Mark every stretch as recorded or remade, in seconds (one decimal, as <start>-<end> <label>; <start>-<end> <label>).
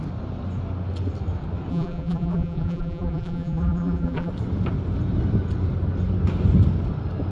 0.0-1.7 recorded; 1.7-4.3 remade; 4.3-7.3 recorded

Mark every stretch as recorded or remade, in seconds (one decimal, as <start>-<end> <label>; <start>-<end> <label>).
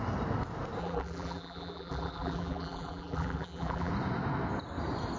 0.0-0.8 recorded; 0.8-3.9 remade; 3.9-5.2 recorded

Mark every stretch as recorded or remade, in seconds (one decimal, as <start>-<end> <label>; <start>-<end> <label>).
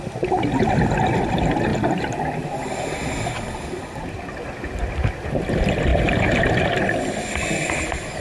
0.0-5.9 recorded; 5.9-6.4 remade; 6.4-8.2 recorded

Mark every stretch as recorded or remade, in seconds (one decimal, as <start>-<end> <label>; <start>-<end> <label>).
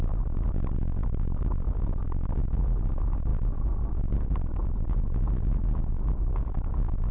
0.0-7.1 recorded